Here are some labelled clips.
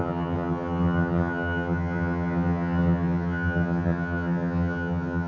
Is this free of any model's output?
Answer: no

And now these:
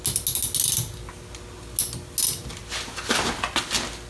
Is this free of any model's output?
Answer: yes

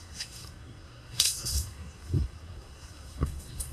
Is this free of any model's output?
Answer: no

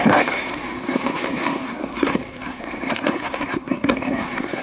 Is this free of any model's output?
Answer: no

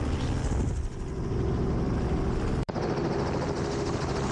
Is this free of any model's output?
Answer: yes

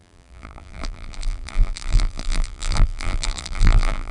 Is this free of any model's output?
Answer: no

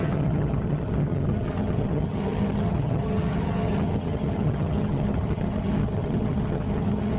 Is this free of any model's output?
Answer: no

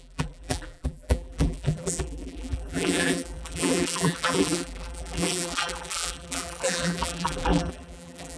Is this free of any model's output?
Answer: no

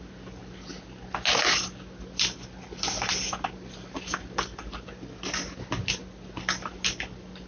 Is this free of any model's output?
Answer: yes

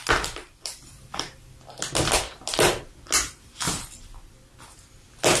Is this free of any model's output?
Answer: yes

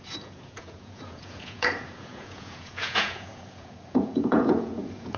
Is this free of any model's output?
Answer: no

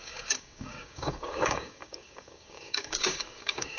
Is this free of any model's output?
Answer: no